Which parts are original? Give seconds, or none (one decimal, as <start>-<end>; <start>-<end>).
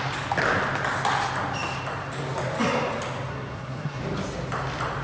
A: 0.0-3.3; 4.0-5.0